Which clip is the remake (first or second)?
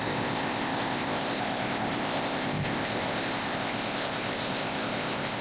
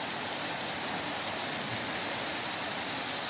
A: first